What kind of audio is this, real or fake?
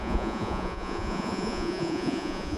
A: fake